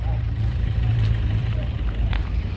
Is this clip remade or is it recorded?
remade